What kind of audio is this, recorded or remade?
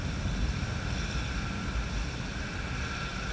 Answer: recorded